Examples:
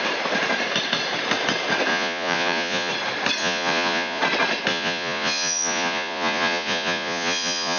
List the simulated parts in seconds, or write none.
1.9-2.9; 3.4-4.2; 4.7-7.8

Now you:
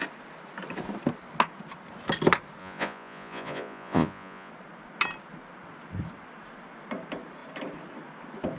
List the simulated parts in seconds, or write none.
2.6-4.5

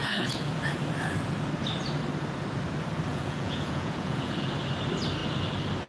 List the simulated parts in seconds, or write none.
0.0-0.5; 3.1-4.5